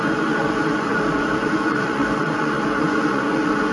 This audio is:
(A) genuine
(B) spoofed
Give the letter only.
B